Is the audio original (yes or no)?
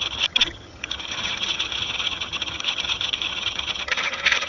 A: no